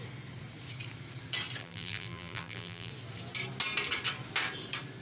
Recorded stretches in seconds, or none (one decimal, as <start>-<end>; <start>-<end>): 0.0-1.6; 2.9-5.0